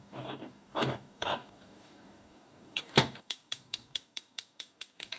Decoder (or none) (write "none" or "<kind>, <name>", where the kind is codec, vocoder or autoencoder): codec, DAC